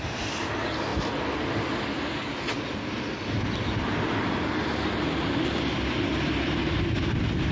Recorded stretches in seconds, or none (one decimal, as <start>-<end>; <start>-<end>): 0.0-7.5

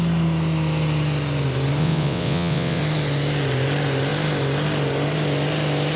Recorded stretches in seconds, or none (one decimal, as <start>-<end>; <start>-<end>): 0.0-1.8; 2.8-6.0

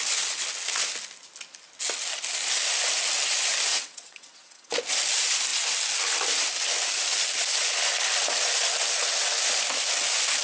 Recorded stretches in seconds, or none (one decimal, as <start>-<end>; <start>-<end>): 0.0-3.7; 4.7-10.4

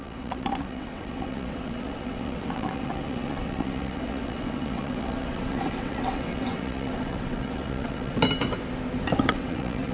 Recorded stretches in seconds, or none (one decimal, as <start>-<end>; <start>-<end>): 8.2-9.3

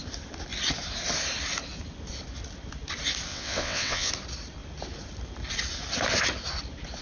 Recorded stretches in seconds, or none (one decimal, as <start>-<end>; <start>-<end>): 0.0-3.3; 4.1-7.0

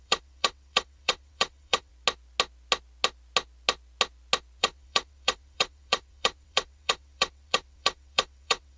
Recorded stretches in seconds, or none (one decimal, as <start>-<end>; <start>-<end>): 1.9-4.6